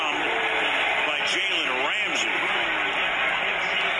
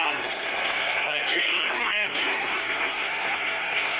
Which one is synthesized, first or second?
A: second